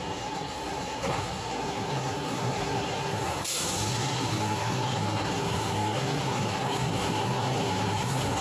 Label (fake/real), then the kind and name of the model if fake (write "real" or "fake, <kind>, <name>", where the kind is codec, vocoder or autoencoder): fake, codec, SNAC